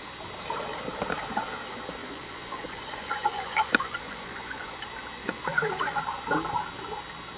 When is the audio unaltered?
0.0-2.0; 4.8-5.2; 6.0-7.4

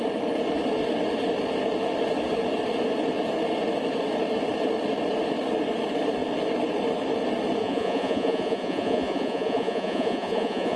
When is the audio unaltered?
0.0-7.6

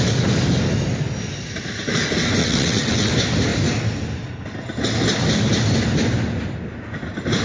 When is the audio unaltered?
0.0-2.4; 3.1-7.4

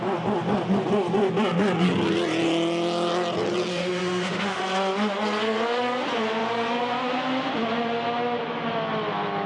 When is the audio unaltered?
0.0-3.7; 4.6-9.5

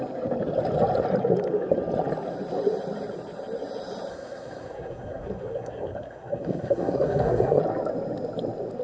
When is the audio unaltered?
0.0-4.1; 7.6-8.8